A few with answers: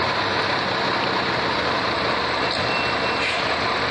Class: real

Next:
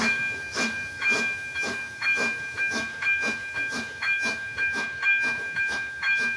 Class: fake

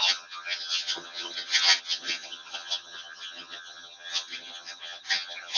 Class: fake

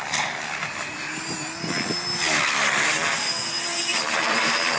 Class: real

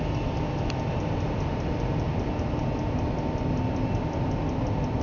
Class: real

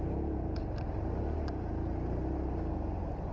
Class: real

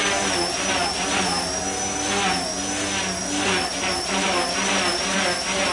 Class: real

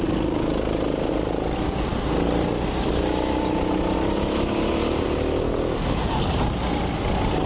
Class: real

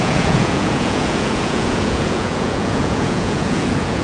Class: fake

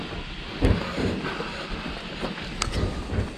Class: real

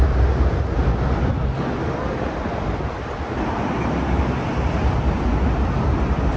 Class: real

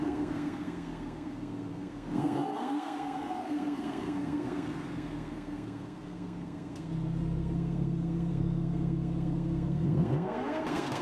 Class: fake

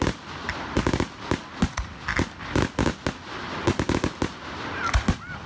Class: real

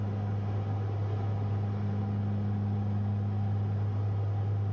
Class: real